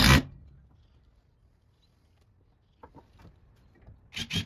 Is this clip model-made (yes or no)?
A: no